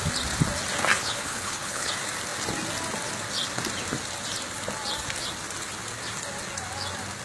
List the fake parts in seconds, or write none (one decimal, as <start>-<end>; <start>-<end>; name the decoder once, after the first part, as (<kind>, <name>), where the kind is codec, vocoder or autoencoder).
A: 1.0-1.9 (codec, HILCodec)